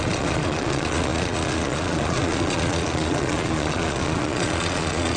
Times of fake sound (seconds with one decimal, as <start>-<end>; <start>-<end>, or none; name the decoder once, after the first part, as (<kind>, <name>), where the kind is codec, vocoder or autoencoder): 0.0-5.2 (vocoder, Vocos)